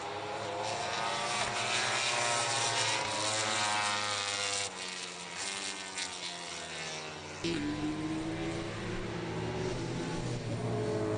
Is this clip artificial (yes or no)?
no